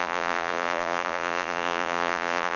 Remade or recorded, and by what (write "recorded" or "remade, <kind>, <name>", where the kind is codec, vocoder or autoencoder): remade, vocoder, BigVGAN v2